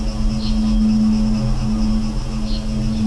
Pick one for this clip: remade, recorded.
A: recorded